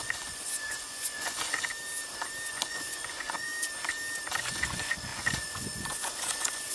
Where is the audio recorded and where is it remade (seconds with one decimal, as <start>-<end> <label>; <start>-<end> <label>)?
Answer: 0.0-1.7 remade; 1.7-2.5 recorded; 2.5-3.5 remade; 3.5-4.4 recorded; 4.4-6.7 remade